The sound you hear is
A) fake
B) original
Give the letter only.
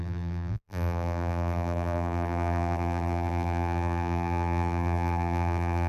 A